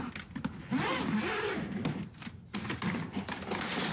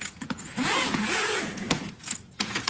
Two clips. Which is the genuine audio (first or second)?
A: first